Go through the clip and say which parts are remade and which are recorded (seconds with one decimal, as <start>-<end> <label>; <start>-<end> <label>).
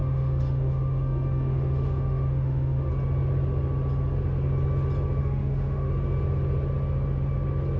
0.0-2.9 remade; 2.9-5.2 recorded; 5.2-5.9 remade; 5.9-7.8 recorded